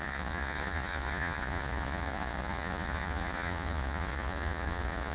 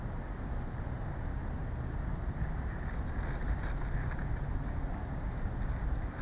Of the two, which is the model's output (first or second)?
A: first